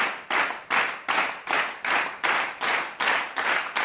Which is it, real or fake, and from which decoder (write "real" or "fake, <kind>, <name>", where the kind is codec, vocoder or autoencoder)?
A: real